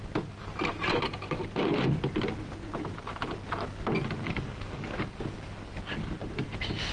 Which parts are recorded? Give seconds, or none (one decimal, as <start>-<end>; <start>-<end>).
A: 0.0-4.2; 5.8-6.9